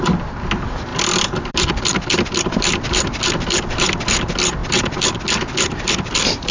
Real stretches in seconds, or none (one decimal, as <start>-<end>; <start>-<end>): 0.0-6.5